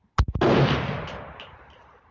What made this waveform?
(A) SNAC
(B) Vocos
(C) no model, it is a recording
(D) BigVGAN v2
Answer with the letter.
C